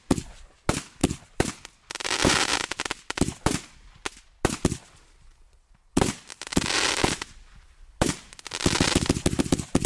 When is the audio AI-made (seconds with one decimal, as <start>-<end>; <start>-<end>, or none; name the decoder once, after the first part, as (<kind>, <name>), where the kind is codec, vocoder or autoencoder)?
none